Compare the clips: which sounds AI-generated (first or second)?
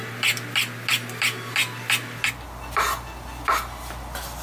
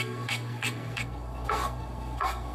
second